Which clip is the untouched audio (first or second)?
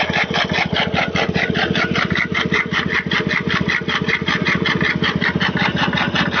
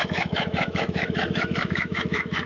first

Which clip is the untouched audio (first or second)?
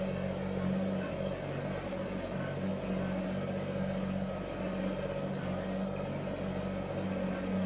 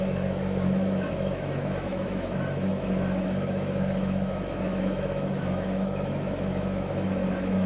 first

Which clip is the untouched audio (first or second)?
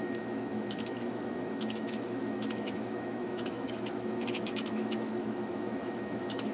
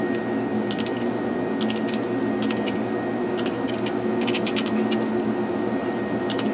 second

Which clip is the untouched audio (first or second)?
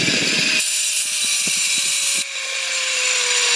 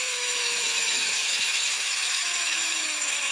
first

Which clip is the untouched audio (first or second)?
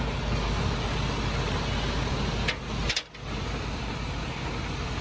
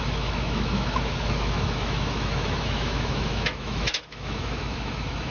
first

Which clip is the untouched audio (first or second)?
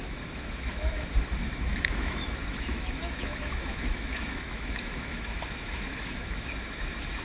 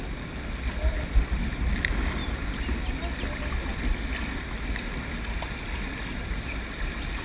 second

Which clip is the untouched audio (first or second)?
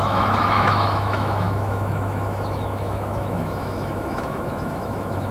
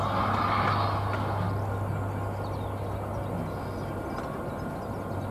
second